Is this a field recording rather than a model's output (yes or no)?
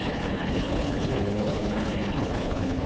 no